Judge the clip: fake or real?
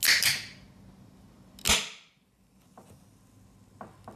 real